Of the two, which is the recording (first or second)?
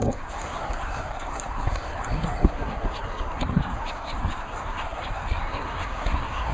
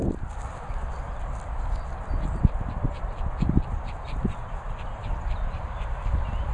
second